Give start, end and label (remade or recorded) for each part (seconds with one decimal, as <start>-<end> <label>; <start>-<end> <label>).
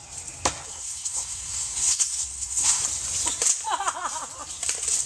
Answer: 0.0-0.7 recorded; 0.7-2.8 remade; 2.8-5.1 recorded